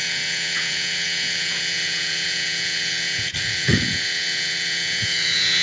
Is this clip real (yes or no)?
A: no